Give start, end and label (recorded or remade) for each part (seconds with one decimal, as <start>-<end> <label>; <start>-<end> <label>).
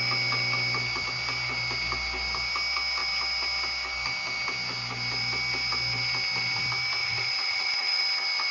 0.0-7.0 recorded; 7.0-8.0 remade; 8.0-8.5 recorded